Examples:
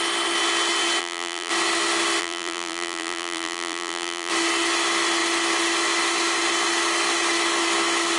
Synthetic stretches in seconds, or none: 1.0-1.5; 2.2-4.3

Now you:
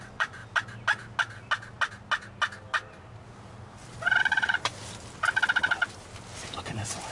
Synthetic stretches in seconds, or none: 0.0-0.4; 4.0-4.7; 6.6-7.1

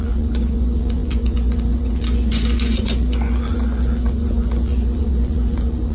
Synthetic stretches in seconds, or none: 0.0-5.9